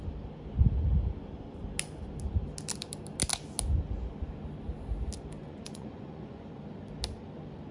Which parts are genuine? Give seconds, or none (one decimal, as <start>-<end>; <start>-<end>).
0.0-5.4; 6.6-7.7